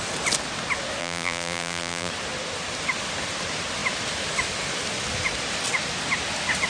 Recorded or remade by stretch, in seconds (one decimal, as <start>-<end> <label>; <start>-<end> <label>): 0.0-1.0 recorded; 1.0-2.1 remade; 2.1-6.7 recorded